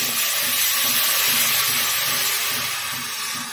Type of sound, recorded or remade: recorded